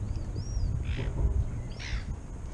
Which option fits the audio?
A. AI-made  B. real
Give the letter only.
B